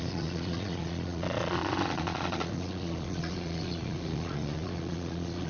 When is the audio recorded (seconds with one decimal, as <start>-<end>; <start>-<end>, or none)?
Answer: none